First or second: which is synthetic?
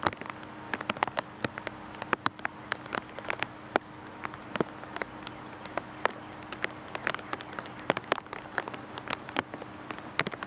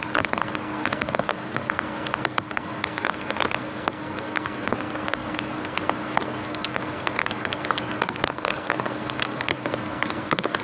second